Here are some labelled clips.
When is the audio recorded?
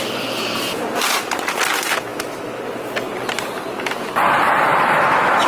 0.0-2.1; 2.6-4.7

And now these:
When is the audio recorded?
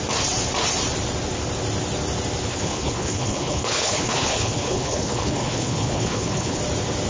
0.0-2.5; 6.6-7.1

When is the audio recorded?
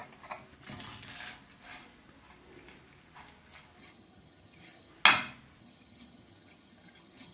0.0-3.8; 4.9-5.6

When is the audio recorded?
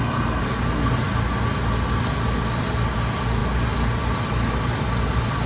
0.0-5.5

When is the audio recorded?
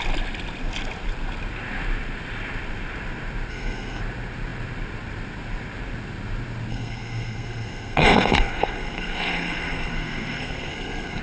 0.0-3.5; 4.0-6.7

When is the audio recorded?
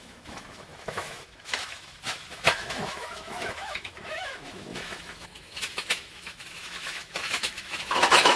none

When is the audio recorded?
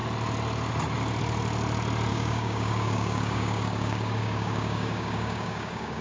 0.0-2.1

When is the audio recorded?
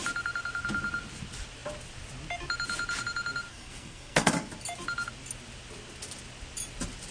0.0-3.5; 4.3-7.1